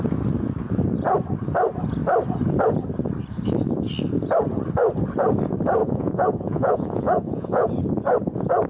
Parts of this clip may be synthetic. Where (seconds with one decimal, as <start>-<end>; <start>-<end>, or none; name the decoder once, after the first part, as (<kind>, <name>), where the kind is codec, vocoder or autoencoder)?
5.8-7.7 (vocoder, Vocos)